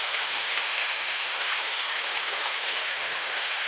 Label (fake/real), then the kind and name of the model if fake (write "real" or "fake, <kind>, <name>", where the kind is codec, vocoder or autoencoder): fake, autoencoder, DAC-VAE